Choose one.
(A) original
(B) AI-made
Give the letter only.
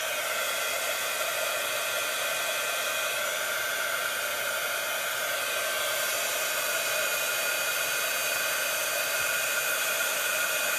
A